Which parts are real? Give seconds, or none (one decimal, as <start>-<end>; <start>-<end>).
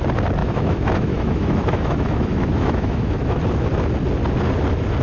0.0-0.4; 3.4-5.0